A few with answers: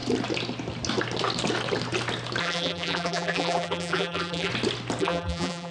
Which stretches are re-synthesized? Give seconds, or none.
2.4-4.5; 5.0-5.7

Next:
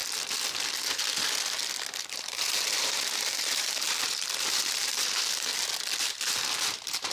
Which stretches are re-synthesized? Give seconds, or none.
2.1-5.5; 6.0-7.1

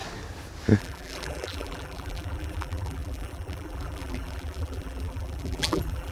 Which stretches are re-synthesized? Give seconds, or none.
0.8-6.1

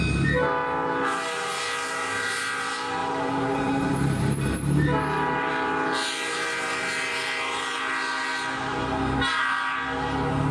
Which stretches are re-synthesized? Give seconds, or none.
3.0-5.5

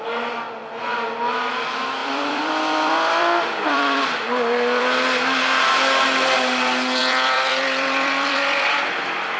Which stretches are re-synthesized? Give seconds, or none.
2.0-4.8; 7.0-9.4

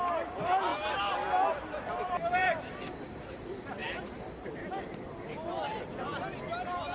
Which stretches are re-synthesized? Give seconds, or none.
0.0-0.7; 2.0-6.9

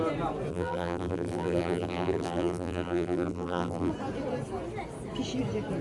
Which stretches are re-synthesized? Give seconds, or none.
0.5-3.9

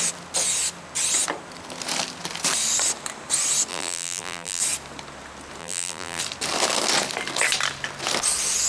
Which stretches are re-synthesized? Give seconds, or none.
3.7-4.6; 5.6-6.2